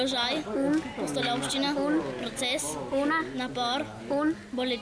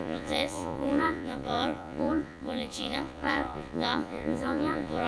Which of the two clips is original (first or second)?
first